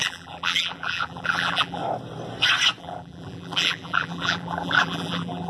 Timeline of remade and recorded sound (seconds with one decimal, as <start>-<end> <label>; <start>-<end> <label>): 0.0-1.8 remade; 1.8-2.8 recorded; 2.8-5.5 remade